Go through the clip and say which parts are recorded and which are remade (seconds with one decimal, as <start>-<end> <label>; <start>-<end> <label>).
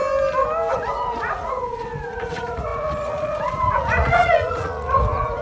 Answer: 0.0-0.7 recorded; 0.7-5.4 remade